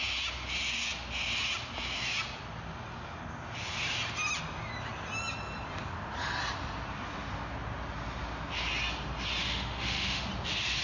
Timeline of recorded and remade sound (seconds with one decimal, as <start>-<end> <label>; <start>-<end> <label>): 0.0-9.4 recorded; 9.4-10.3 remade; 10.3-10.8 recorded